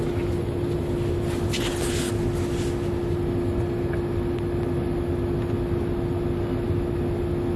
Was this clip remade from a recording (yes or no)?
no